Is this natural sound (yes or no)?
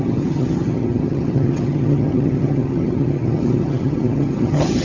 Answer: no